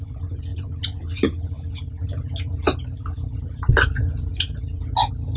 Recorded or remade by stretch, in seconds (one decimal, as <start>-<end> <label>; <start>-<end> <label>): 0.0-5.4 recorded